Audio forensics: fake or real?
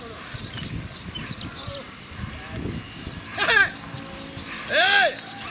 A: real